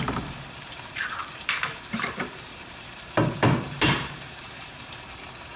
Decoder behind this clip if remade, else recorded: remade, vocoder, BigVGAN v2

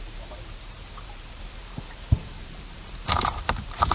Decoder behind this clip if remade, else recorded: remade, vocoder, BigVGAN v2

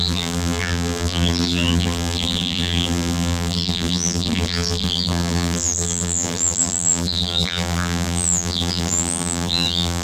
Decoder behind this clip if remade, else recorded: remade, vocoder, BigVGAN v2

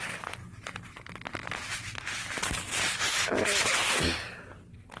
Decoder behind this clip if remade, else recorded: recorded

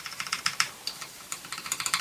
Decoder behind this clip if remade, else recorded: remade, vocoder, BigVGAN v2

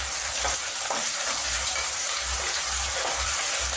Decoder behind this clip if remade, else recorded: remade, vocoder, BigVGAN v2